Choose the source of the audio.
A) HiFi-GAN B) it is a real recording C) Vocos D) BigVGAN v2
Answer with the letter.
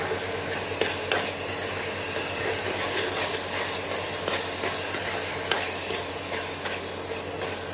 B